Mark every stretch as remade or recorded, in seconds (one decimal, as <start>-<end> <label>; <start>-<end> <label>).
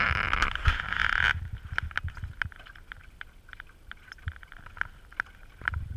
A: 0.0-6.0 recorded